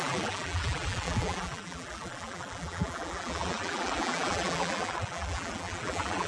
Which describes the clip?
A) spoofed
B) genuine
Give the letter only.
A